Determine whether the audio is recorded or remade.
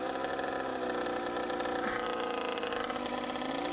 recorded